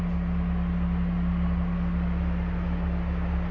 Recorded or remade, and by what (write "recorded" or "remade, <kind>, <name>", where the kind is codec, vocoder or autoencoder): recorded